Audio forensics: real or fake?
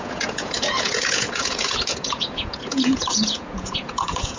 fake